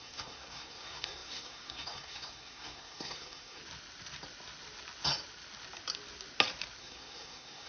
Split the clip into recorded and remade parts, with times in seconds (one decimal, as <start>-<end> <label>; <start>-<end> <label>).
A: 0.0-3.6 remade; 3.6-6.8 recorded; 6.8-7.7 remade